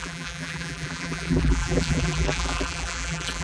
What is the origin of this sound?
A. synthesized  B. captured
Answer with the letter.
A